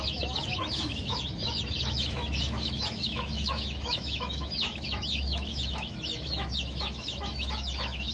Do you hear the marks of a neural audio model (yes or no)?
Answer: yes